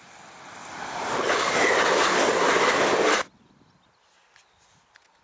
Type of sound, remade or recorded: recorded